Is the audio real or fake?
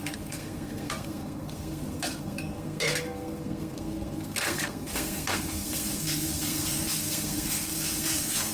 fake